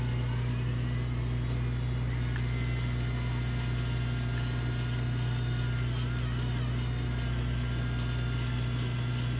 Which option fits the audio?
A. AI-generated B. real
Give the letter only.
B